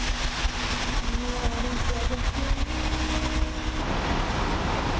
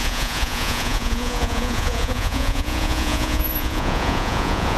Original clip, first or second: first